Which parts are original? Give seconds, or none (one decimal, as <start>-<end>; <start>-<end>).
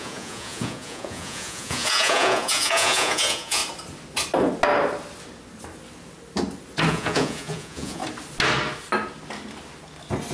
3.6-6.9; 8.0-10.3